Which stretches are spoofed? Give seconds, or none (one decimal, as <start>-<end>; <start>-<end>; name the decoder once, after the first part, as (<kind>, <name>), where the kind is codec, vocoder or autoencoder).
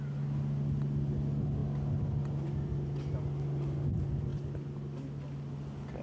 none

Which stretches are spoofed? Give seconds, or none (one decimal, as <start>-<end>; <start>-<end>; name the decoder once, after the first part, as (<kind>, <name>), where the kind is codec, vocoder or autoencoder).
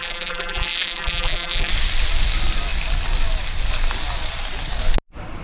0.0-1.7 (vocoder, BigVGAN v2)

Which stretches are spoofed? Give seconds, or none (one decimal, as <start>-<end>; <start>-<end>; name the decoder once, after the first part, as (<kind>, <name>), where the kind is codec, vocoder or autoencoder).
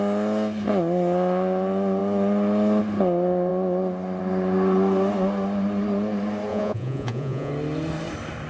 6.5-7.5 (vocoder, Vocos)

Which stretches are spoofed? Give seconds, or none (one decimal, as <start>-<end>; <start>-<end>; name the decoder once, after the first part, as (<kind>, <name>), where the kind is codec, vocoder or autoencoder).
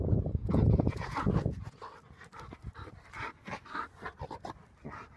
0.0-1.8 (vocoder, Vocos)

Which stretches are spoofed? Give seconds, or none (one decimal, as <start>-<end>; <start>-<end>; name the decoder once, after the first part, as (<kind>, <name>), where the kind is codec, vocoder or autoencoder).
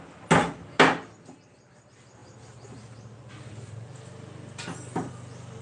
none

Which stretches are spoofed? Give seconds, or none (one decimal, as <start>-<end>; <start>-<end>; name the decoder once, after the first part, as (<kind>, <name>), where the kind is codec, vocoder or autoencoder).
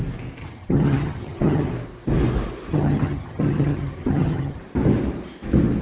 0.4-1.7 (vocoder, HiFi-GAN); 2.7-4.6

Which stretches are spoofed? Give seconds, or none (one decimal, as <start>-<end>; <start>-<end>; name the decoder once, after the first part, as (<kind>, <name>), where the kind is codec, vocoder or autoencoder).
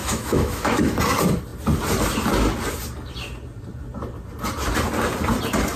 0.0-1.0 (autoencoder, DAC-VAE)